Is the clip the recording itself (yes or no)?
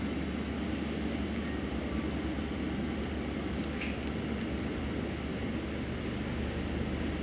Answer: yes